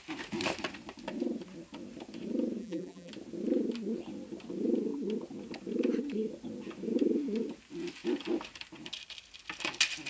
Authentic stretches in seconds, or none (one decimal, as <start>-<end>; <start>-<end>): 0.0-2.6; 3.1-10.1